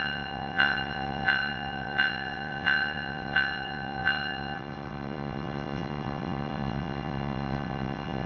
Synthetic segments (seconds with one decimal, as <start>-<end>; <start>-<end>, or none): 0.0-8.3